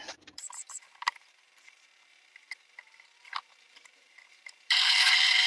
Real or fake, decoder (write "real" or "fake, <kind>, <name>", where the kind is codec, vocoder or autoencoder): fake, vocoder, BigVGAN v2